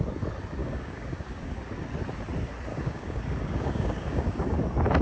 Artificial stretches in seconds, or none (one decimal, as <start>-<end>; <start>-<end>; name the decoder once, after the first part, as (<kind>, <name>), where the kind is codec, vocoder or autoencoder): 0.6-1.6 (codec, DAC); 2.7-4.6